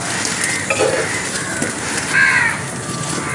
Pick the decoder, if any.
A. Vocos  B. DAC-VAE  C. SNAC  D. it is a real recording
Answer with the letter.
D